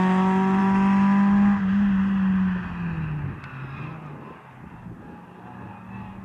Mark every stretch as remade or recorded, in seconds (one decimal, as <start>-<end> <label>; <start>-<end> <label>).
0.0-6.2 recorded